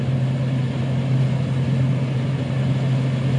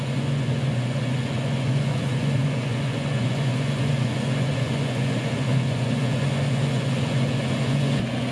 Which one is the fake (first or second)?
second